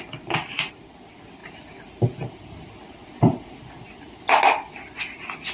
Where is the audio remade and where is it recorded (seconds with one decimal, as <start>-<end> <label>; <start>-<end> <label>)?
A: 0.0-5.5 recorded